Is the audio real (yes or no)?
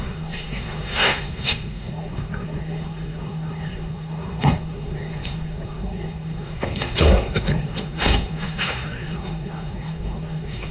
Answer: no